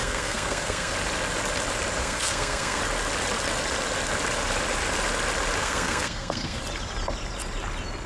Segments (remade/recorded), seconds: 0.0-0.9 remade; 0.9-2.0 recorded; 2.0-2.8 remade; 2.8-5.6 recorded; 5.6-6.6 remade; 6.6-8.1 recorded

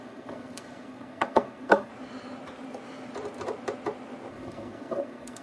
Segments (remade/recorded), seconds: 0.0-1.9 remade; 1.9-4.3 recorded; 4.3-5.4 remade

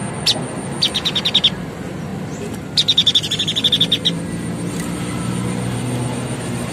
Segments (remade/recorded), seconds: 0.0-6.7 recorded

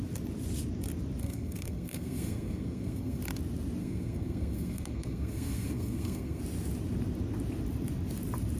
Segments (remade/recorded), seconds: 0.0-1.2 recorded; 1.2-3.2 remade; 3.2-3.8 recorded; 3.8-6.4 remade; 6.4-8.6 recorded

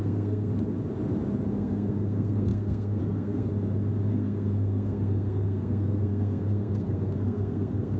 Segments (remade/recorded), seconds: 0.0-0.5 remade; 0.5-1.5 recorded; 1.5-3.5 remade; 3.5-4.1 recorded; 4.1-8.0 remade

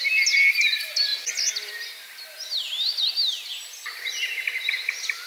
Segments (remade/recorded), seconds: 0.0-5.3 recorded